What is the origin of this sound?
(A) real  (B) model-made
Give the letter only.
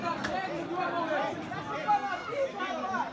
A